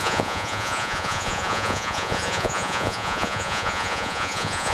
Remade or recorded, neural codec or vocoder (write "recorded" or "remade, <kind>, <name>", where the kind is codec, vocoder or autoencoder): remade, vocoder, Vocos